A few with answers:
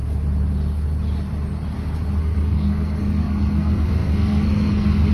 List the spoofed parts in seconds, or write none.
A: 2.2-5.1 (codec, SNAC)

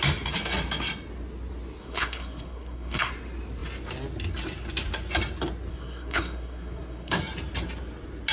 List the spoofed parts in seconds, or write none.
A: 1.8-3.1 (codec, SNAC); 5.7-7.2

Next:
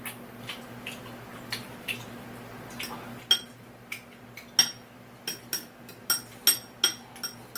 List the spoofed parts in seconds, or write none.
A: none